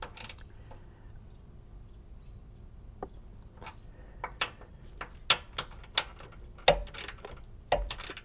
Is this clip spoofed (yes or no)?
no